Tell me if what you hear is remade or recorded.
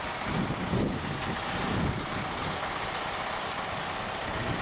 recorded